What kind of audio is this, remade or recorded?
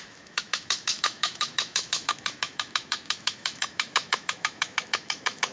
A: remade